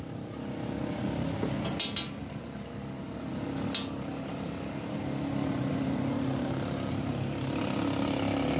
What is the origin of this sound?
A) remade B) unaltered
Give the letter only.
B